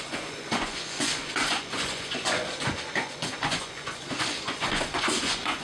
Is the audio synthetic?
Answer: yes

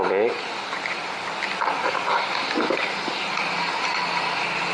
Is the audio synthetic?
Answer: no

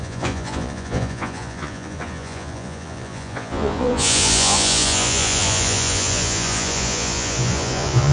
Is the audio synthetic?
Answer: yes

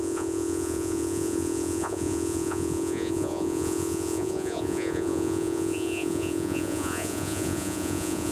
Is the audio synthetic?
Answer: yes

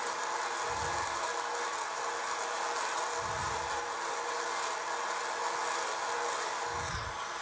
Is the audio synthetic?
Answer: no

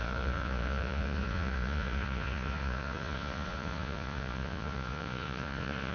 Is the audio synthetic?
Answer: yes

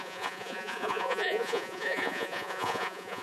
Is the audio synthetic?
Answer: yes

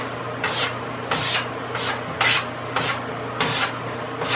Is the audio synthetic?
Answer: no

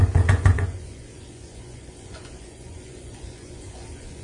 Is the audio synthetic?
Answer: yes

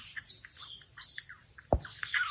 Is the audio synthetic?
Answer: no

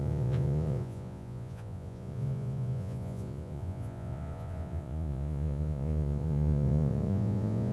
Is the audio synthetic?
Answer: yes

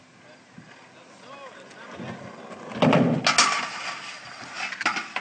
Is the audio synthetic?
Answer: no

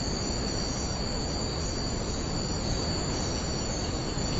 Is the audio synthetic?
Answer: no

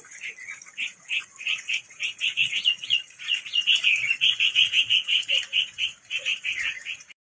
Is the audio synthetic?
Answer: yes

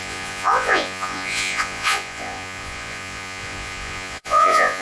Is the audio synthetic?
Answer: yes